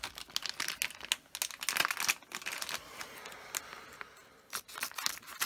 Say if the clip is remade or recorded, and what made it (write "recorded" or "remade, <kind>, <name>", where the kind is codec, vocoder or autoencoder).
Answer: recorded